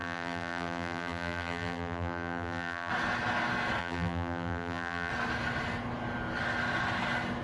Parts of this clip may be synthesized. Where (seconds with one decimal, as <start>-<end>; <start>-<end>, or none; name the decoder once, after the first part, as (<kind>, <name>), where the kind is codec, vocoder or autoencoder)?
0.0-2.9 (vocoder, BigVGAN v2); 3.8-5.1